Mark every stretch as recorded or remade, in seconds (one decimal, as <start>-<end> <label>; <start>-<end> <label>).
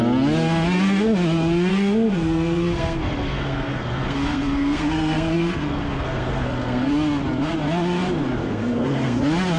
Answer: 0.0-1.7 recorded; 1.7-6.9 remade; 6.9-8.4 recorded; 8.4-9.2 remade; 9.2-9.6 recorded